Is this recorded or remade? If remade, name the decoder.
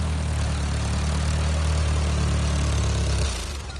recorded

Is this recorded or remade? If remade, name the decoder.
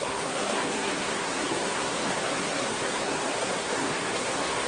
remade, codec, SNAC